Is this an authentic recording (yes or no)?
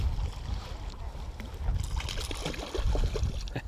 yes